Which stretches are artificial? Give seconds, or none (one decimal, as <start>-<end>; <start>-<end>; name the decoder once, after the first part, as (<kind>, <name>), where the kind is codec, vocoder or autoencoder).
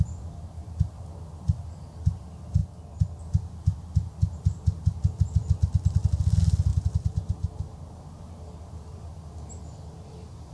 none